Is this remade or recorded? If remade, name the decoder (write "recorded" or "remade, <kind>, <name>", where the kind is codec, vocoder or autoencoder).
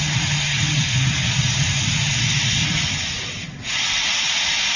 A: recorded